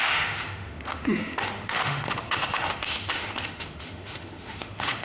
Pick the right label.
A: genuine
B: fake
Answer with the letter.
B